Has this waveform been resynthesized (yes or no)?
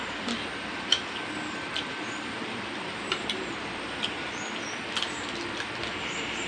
no